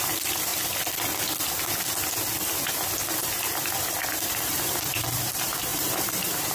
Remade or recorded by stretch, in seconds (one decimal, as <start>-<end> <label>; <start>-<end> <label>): 0.0-0.5 remade; 0.5-4.3 recorded; 4.3-6.5 remade